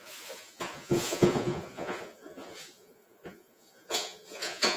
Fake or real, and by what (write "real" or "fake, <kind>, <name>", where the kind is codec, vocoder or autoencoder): fake, vocoder, Vocos